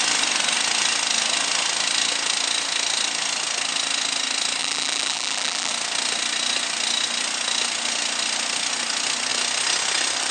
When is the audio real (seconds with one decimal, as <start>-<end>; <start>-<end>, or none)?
0.0-4.6; 5.7-10.3